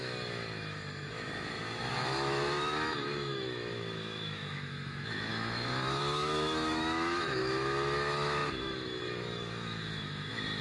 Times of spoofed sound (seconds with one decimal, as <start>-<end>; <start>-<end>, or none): 0.0-10.6